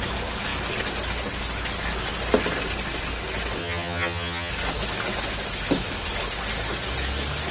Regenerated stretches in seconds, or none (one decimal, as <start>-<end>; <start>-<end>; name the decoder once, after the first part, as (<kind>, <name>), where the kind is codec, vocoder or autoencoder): 3.6-4.5 (vocoder, HiFi-GAN)

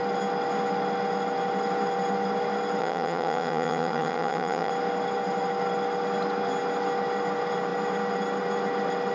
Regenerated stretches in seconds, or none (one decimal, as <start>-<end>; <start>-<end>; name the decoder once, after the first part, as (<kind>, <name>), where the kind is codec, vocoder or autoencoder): 2.8-4.7 (vocoder, HiFi-GAN)

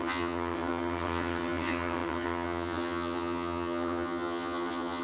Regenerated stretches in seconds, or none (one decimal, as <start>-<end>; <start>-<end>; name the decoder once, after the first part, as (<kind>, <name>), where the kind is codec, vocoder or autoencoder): 0.0-5.0 (vocoder, HiFi-GAN)